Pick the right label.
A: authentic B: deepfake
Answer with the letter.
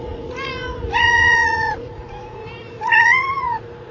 B